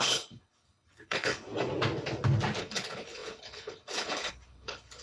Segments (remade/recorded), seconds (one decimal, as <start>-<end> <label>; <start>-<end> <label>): 0.0-1.5 remade; 1.5-2.6 recorded; 2.6-5.0 remade